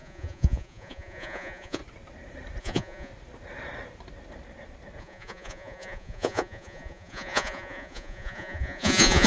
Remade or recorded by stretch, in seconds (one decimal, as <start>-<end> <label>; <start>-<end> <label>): 0.0-1.8 remade; 1.8-2.6 recorded; 2.6-3.1 remade; 3.1-5.0 recorded; 5.0-9.3 remade